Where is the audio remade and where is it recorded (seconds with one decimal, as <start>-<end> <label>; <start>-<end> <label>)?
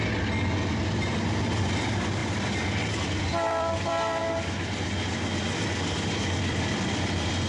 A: 0.0-0.7 recorded; 0.7-2.2 remade; 2.2-3.0 recorded; 3.0-4.2 remade; 4.2-5.9 recorded; 5.9-7.5 remade